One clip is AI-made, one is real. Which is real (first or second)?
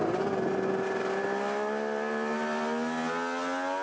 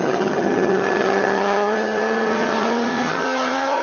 first